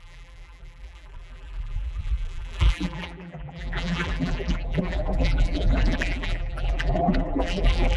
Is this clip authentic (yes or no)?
no